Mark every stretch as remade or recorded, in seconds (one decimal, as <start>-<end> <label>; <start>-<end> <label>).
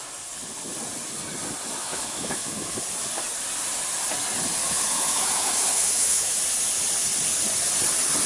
0.0-1.8 recorded; 1.8-2.8 remade; 2.8-4.6 recorded; 4.6-6.4 remade; 6.4-8.3 recorded